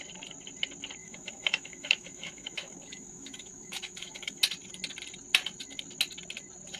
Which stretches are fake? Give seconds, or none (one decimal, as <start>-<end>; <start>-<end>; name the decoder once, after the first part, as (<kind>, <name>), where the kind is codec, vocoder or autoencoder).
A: 1.0-4.4 (autoencoder, DAC-VAE)